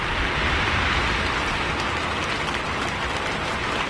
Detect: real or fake real